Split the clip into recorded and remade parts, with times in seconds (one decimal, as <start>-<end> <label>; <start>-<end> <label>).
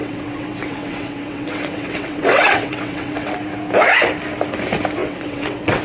0.0-3.3 remade; 3.3-5.0 recorded; 5.0-5.8 remade